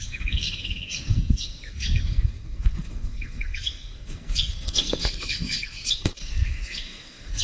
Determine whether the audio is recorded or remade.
remade